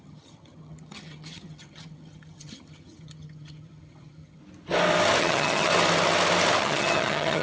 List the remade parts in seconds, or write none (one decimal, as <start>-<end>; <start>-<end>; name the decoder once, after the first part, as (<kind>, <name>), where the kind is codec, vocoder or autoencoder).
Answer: 0.0-4.4 (vocoder, HiFi-GAN); 5.2-5.7; 6.6-7.4